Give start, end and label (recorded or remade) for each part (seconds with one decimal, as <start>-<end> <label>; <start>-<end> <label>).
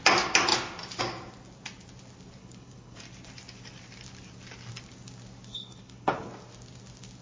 0.0-2.4 recorded; 2.4-3.0 remade; 3.0-5.5 recorded; 5.5-6.3 remade; 6.3-7.2 recorded